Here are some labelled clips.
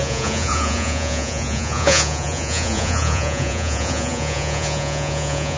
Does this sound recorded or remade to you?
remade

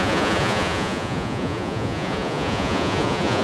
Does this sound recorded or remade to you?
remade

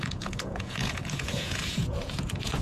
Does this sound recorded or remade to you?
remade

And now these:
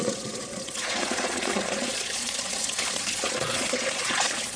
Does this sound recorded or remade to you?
remade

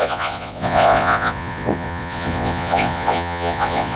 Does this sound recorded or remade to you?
remade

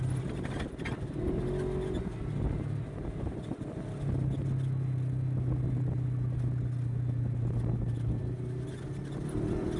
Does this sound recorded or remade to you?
recorded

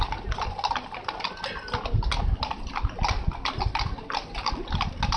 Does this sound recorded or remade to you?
recorded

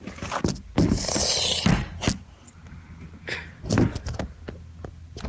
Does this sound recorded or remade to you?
recorded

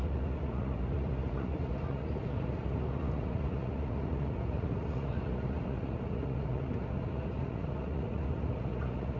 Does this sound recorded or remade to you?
remade